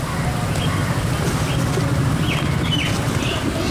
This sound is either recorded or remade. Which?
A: recorded